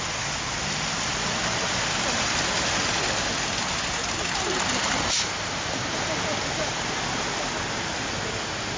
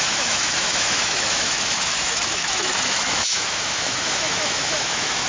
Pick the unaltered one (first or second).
first